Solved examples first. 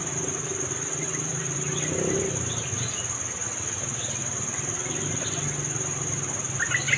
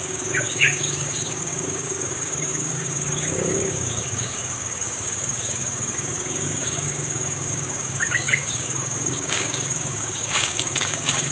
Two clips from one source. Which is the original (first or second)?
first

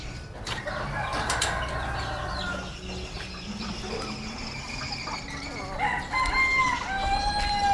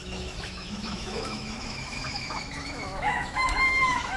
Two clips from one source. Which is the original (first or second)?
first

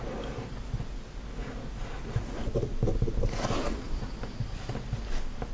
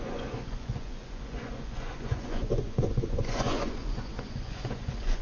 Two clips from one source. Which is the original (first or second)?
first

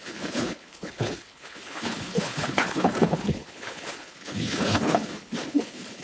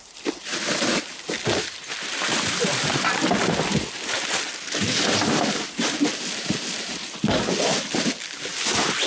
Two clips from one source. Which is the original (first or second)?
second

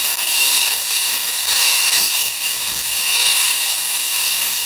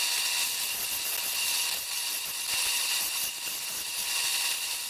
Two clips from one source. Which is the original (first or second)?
second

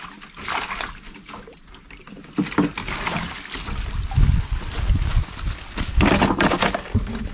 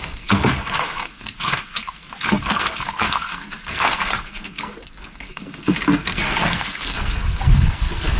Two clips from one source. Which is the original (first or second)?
first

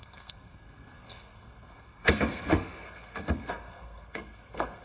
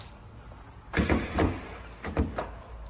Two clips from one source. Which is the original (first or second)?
second